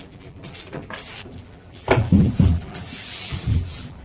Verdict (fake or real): fake